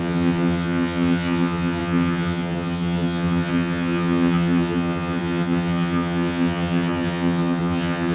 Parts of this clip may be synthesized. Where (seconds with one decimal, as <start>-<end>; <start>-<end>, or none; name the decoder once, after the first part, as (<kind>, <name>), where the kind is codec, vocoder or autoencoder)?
0.0-8.1 (vocoder, HiFi-GAN)